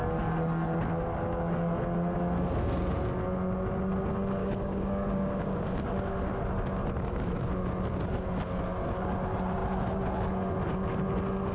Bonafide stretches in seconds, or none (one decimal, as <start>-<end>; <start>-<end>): 0.0-4.4; 6.0-11.5